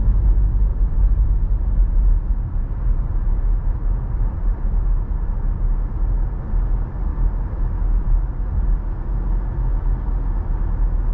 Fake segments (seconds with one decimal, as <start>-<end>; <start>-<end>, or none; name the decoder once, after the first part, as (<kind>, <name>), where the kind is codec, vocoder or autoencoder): 0.7-2.3 (vocoder, BigVGAN v2)